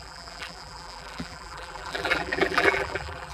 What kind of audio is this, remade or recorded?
remade